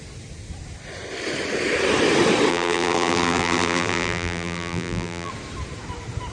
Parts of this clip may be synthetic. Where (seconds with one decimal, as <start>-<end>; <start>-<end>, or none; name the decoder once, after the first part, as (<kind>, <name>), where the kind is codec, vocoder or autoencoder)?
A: 2.5-5.3 (vocoder, BigVGAN v2)